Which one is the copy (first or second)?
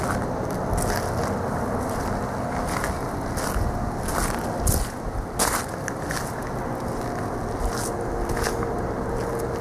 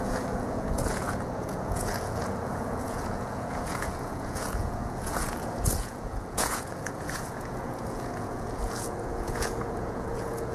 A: second